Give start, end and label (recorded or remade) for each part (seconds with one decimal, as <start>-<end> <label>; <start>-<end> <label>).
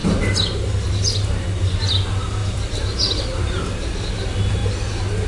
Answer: 0.0-2.4 recorded; 2.4-3.6 remade; 3.6-5.3 recorded